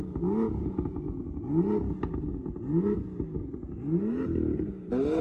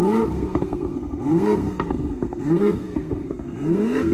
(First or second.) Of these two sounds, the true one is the first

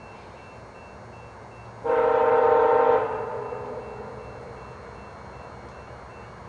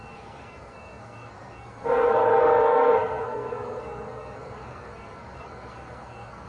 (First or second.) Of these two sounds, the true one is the first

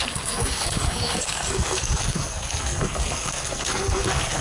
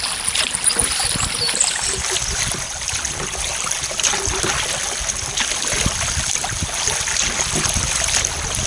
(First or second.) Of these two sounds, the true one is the second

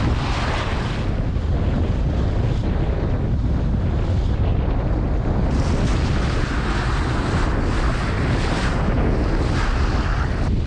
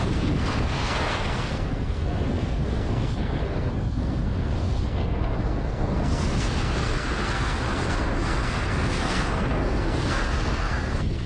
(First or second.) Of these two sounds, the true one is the first